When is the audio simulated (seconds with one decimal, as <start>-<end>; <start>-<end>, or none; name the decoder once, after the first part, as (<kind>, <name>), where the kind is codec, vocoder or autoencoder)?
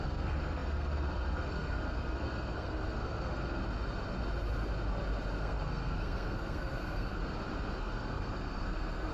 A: 0.0-3.6 (codec, SNAC); 5.4-7.2; 7.8-9.1